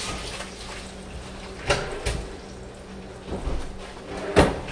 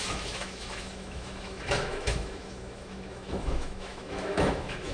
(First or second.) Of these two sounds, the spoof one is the second